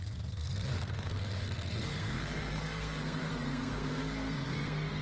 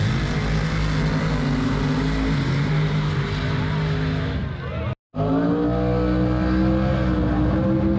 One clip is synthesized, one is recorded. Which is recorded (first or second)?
second